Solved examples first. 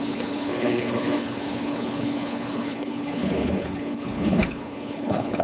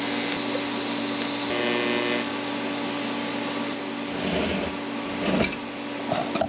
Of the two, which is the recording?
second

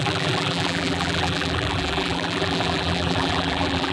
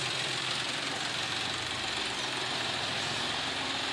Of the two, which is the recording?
second